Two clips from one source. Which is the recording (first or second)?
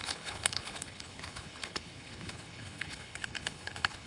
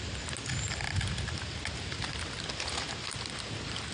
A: second